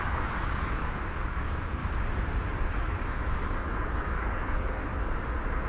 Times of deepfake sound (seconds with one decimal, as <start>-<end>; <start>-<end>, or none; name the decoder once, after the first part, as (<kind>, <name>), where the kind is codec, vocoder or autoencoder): 0.0-1.8 (codec, DAC); 2.6-4.9